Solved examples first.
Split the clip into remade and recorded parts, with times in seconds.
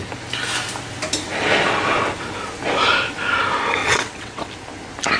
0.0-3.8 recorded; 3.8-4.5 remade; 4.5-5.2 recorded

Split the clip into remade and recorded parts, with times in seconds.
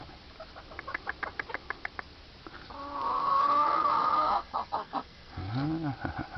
0.0-3.2 recorded; 3.2-5.5 remade; 5.5-6.4 recorded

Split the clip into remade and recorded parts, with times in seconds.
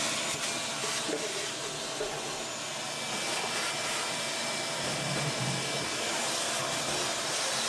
0.0-7.7 recorded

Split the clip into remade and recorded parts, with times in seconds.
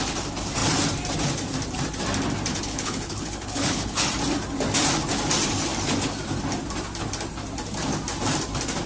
0.0-2.5 recorded; 2.5-4.1 remade; 4.1-8.9 recorded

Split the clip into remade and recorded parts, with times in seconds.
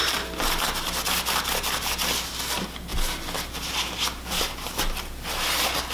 0.0-5.9 recorded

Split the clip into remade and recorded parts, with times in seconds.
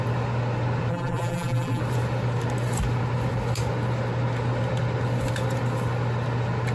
0.0-0.9 recorded; 0.9-1.8 remade; 1.8-6.7 recorded